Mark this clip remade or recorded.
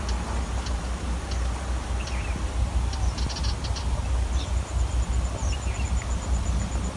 recorded